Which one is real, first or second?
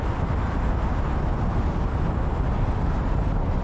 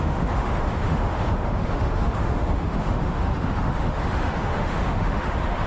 first